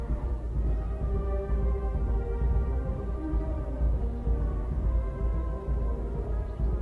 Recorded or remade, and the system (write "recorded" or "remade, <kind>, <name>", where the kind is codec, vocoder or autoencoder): remade, vocoder, BigVGAN v2